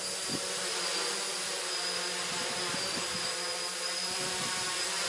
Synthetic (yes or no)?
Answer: no